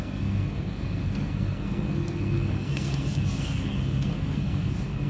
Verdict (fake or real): fake